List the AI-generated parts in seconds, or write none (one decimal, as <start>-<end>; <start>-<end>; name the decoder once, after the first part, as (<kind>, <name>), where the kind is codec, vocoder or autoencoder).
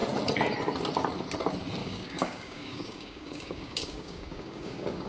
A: 1.8-5.1 (codec, DAC)